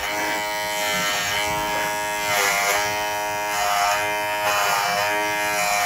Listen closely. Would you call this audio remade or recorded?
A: recorded